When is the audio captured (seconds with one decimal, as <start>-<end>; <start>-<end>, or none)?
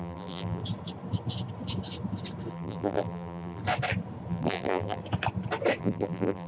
0.6-2.5; 3.6-4.3; 5.0-5.8